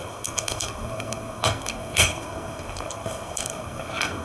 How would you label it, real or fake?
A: fake